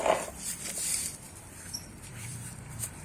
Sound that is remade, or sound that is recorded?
remade